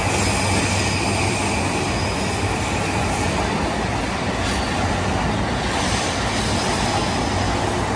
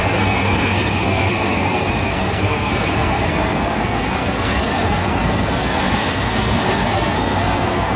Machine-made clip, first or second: second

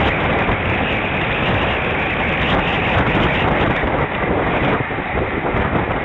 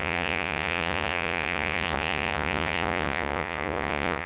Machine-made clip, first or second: second